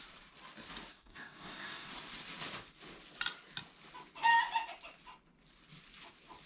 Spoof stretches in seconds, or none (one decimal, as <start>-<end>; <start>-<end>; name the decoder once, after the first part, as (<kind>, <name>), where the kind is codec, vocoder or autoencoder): 0.9-1.9 (codec, DAC)